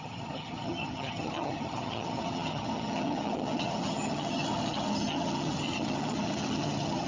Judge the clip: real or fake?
fake